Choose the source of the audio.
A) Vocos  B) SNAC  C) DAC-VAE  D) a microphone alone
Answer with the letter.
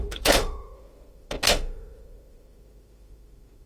C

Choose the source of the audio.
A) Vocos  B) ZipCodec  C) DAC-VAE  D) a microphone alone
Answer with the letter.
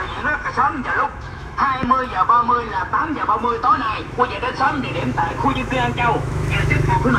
C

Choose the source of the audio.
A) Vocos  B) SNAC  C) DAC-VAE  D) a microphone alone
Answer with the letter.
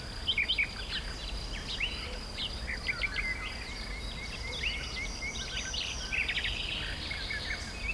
D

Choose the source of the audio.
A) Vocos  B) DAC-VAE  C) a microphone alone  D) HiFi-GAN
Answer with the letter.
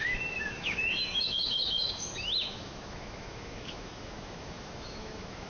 B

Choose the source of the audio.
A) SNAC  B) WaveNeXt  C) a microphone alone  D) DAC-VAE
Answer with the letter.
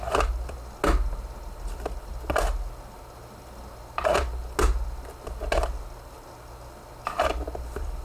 C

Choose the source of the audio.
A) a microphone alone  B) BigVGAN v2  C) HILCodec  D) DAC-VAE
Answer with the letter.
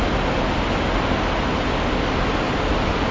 A